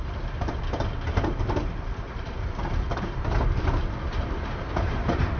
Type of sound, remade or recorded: remade